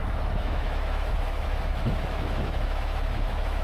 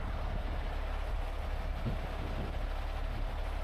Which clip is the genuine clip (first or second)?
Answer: second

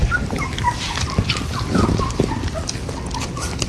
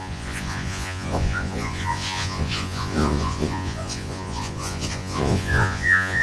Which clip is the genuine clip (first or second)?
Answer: first